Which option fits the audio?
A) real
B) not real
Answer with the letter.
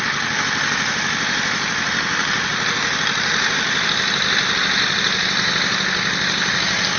A